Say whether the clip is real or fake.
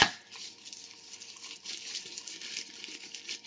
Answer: fake